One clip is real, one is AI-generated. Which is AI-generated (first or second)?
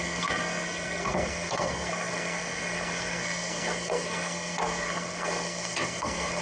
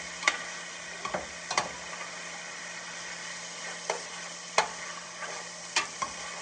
first